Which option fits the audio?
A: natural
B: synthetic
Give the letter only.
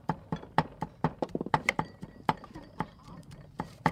B